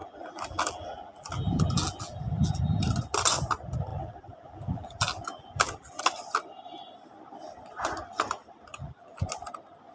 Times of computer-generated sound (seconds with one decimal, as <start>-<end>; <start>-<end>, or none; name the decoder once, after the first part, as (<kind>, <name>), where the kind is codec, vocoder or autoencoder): 0.0-2.8 (vocoder, BigVGAN v2); 3.9-6.0; 8.7-9.3